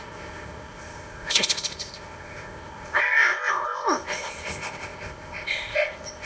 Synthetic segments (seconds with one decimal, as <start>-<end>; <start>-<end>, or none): 0.0-6.3